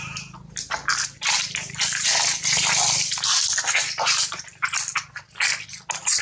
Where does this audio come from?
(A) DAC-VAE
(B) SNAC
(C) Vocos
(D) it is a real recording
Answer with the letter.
D